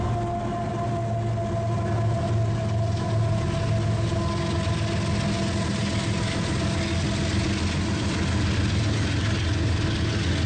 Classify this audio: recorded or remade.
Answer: recorded